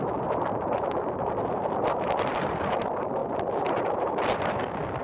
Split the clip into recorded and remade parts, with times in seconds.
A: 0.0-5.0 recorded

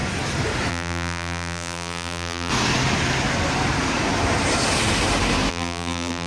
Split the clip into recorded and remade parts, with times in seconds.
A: 0.0-0.7 recorded; 0.7-2.5 remade; 2.5-5.5 recorded; 5.5-6.3 remade

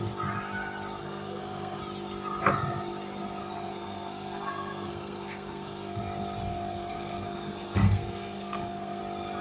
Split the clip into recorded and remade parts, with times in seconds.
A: 0.0-1.0 recorded; 1.0-1.8 remade; 1.8-3.4 recorded; 3.4-6.0 remade; 6.0-6.5 recorded; 6.5-9.0 remade; 9.0-9.4 recorded

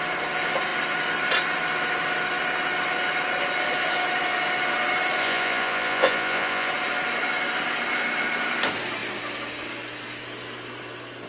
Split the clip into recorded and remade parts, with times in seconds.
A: 0.0-5.2 recorded; 5.2-6.7 remade; 6.7-11.3 recorded

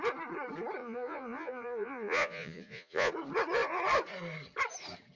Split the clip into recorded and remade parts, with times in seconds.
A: 0.0-0.8 recorded; 0.8-3.1 remade; 3.1-5.2 recorded

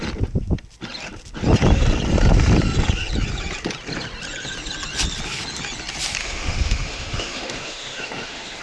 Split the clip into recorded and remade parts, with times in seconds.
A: 0.0-6.2 recorded; 6.2-8.6 remade

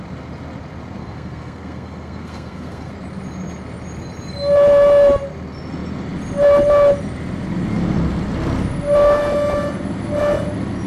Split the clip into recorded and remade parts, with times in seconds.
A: 0.0-1.0 recorded; 1.0-2.9 remade; 2.9-10.9 recorded